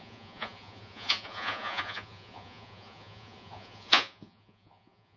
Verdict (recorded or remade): remade